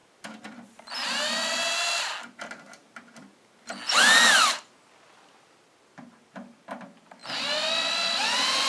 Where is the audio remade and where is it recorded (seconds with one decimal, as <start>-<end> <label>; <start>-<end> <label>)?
0.0-8.7 recorded